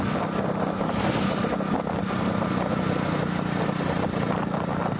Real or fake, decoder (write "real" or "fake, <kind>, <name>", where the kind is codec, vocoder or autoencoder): real